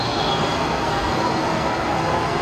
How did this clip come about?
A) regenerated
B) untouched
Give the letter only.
A